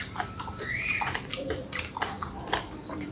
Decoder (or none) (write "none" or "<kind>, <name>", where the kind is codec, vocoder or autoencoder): vocoder, BigVGAN v2